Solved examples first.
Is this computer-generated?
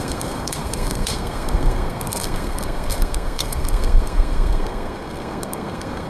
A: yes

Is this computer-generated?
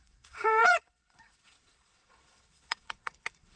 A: yes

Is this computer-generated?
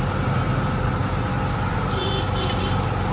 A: yes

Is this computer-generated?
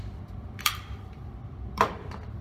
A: yes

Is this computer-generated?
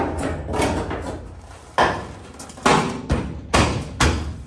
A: no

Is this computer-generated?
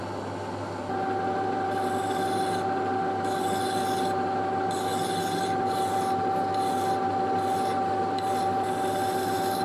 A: no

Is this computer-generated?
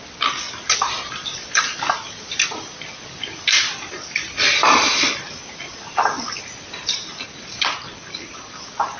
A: no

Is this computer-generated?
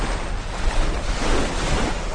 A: no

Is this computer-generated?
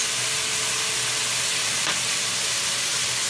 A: no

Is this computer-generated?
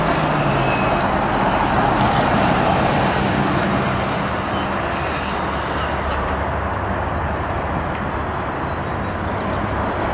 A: no